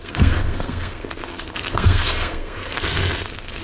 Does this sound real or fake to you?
fake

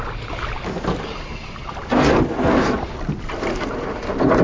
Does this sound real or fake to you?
real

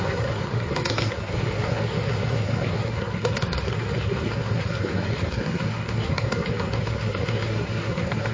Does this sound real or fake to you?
fake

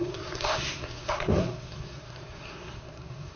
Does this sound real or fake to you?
fake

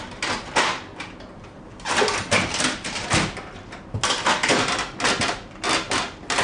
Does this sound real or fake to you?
real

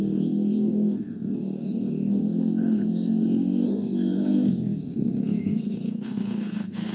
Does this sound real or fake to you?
fake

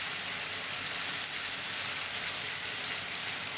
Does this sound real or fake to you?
real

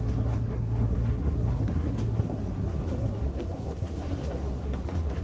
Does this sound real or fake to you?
fake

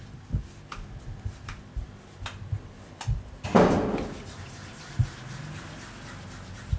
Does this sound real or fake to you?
real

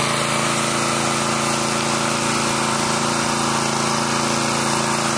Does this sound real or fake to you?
real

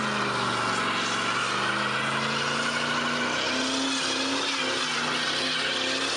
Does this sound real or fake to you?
real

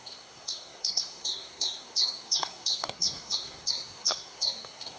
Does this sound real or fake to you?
fake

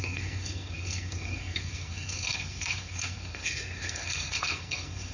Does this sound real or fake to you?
fake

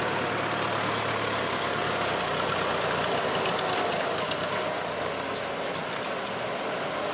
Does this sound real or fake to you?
real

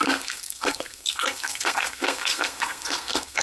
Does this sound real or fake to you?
fake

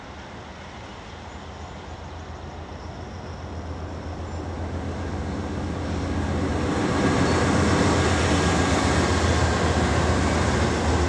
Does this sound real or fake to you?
real